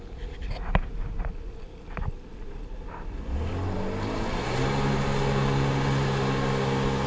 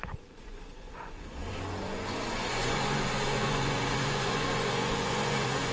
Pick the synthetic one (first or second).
second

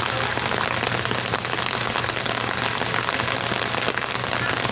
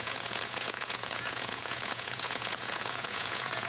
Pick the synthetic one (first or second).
second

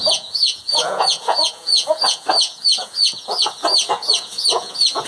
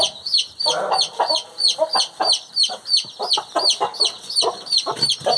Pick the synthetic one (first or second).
first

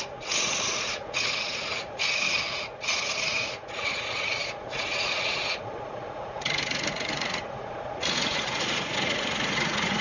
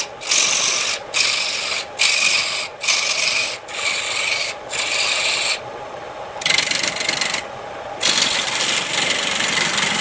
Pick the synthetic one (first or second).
first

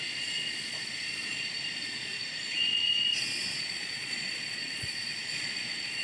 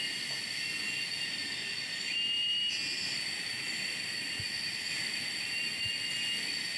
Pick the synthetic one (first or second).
first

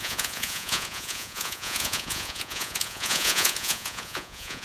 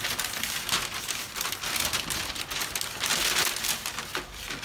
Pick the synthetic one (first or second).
first